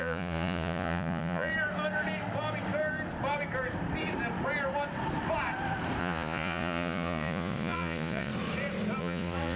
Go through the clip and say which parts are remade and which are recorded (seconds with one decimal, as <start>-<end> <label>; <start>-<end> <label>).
0.0-1.5 remade; 1.5-6.0 recorded; 6.0-8.3 remade; 8.3-9.0 recorded; 9.0-9.6 remade